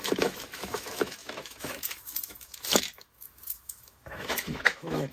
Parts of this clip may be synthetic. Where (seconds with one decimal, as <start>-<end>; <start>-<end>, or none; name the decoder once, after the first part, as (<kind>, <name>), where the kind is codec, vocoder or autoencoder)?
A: 0.0-5.1 (autoencoder, DAC-VAE)